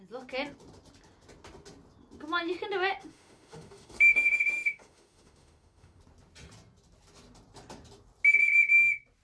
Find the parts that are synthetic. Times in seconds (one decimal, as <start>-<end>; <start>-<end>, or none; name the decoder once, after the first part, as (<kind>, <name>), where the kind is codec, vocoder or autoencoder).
3.0-6.0 (autoencoder, DAC-VAE)